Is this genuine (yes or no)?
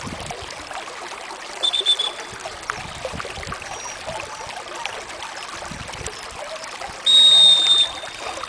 yes